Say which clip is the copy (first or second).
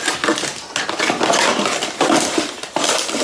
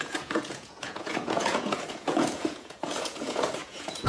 second